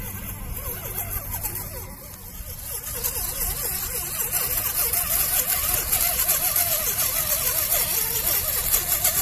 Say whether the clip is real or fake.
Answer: real